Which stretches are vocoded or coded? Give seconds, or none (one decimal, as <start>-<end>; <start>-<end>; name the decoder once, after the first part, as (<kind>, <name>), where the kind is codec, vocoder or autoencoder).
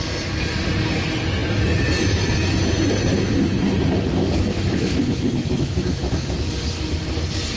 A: 3.1-3.6 (autoencoder, DAC-VAE); 4.2-6.5